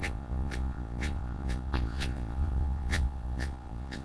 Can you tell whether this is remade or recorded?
remade